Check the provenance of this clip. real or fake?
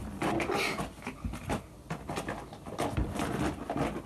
real